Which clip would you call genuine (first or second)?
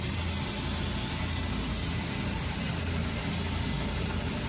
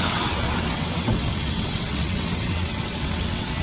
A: first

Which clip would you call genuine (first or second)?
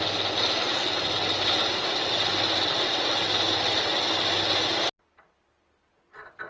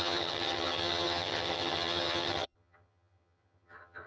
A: first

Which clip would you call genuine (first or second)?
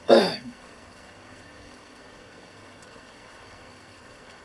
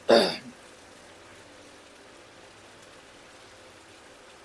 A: second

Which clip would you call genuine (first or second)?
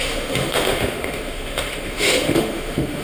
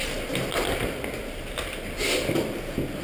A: second